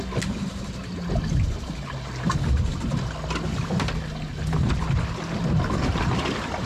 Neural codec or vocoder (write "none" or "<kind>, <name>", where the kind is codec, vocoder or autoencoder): none